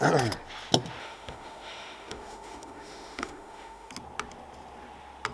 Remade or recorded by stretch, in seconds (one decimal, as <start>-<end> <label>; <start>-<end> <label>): 0.0-1.0 recorded; 1.0-3.9 remade; 3.9-5.3 recorded